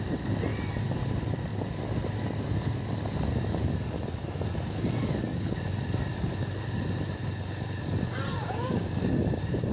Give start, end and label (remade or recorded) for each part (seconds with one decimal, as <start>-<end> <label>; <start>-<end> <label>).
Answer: 0.0-8.4 recorded; 8.4-8.9 remade; 8.9-9.7 recorded